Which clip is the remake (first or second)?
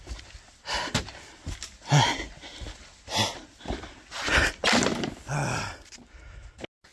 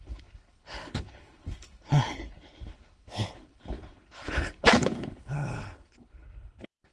second